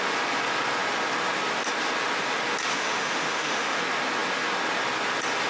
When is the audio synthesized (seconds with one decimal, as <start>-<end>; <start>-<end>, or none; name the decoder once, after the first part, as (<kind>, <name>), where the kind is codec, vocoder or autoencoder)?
2.7-3.8 (autoencoder, DAC-VAE)